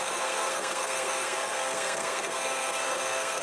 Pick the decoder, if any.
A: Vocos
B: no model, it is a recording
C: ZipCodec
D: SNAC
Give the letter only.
D